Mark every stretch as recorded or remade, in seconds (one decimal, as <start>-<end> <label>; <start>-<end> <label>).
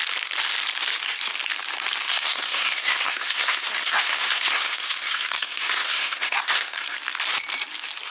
0.0-2.1 recorded; 2.1-7.0 remade; 7.0-8.1 recorded